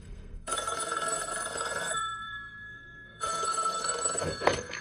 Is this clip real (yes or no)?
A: no